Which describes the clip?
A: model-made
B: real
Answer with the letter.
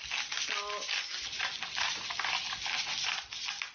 B